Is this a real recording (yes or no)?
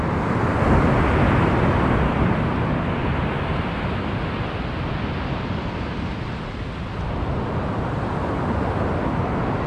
yes